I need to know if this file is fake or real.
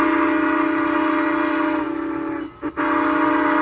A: real